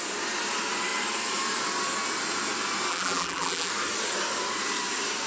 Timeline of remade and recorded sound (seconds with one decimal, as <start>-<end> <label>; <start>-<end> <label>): 0.0-2.9 recorded; 2.9-3.7 remade; 3.7-5.3 recorded